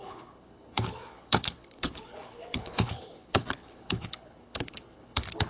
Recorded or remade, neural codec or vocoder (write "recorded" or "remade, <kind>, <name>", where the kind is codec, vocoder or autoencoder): remade, codec, HILCodec